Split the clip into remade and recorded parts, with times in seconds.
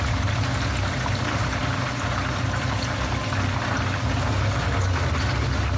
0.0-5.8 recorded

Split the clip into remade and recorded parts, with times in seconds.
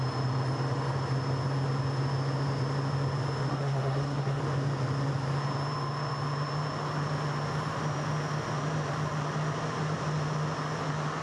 0.0-3.5 recorded; 3.5-4.4 remade; 4.4-11.2 recorded